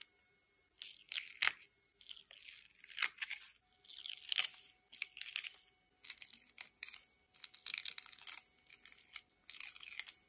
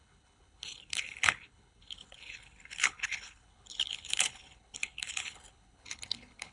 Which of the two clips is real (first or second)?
first